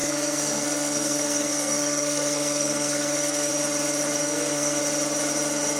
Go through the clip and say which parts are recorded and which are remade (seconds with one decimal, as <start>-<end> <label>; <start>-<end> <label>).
0.0-3.5 remade; 3.5-4.2 recorded; 4.2-4.8 remade; 4.8-5.8 recorded